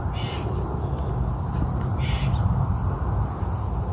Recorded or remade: recorded